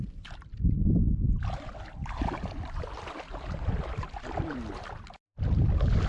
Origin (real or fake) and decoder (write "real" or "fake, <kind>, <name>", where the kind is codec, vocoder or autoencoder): fake, vocoder, BigVGAN v2